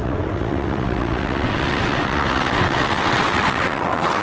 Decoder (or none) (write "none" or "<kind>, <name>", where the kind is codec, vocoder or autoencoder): vocoder, WaveNeXt